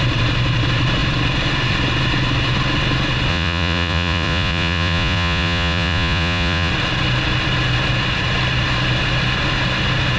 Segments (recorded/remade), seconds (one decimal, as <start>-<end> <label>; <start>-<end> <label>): 0.0-3.3 recorded; 3.3-6.7 remade; 6.7-10.2 recorded